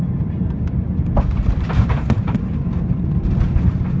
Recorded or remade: recorded